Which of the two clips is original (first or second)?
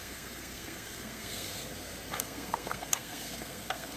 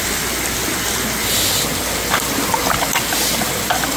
second